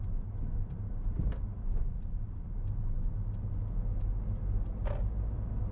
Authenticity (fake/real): real